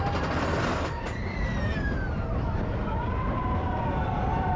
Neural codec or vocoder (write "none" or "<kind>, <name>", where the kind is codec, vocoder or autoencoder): none